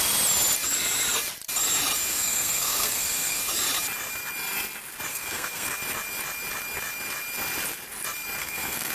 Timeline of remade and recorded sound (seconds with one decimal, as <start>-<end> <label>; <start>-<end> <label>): 0.0-2.1 recorded; 2.1-3.4 remade; 3.4-5.1 recorded; 5.1-5.8 remade; 5.8-8.4 recorded; 8.4-8.9 remade